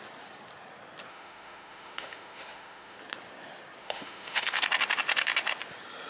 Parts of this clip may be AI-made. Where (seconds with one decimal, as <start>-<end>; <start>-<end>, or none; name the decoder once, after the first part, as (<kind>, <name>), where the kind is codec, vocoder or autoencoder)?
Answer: 1.1-3.0 (autoencoder, DAC-VAE); 3.8-4.6